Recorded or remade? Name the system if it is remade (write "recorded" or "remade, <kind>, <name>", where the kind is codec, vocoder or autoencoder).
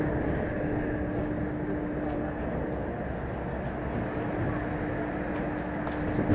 recorded